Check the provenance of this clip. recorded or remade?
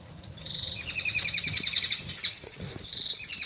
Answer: remade